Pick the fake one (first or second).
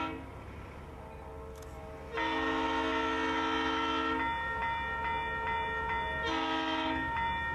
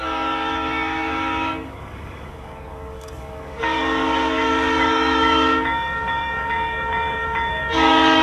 second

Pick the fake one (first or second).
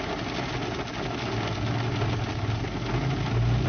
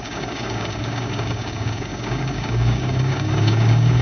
second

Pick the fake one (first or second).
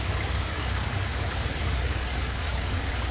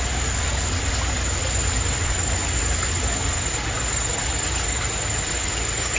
first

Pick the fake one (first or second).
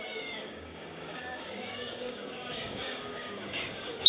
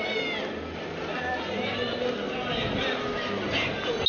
first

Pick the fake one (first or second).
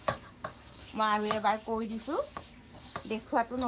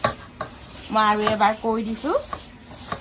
first